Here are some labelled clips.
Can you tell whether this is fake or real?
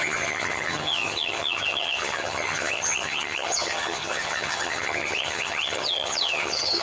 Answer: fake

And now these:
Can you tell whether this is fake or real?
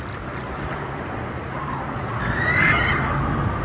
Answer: real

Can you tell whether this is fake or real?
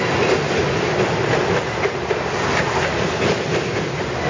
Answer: real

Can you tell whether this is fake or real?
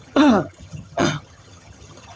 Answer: fake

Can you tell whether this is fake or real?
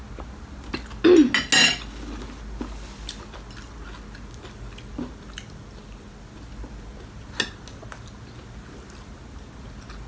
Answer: real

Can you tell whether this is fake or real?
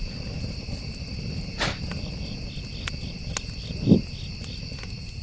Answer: real